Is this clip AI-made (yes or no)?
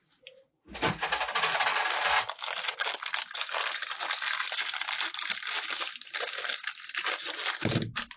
no